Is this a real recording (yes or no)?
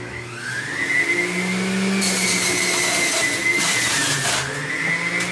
yes